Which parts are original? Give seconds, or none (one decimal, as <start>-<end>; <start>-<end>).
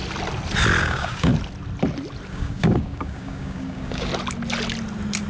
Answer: 0.0-0.8; 1.3-2.3; 4.1-5.3